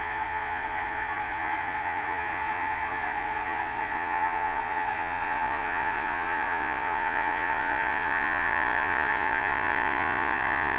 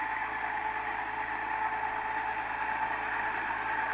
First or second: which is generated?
first